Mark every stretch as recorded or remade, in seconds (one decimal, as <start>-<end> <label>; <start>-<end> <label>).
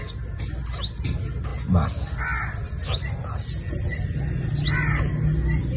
0.0-5.8 recorded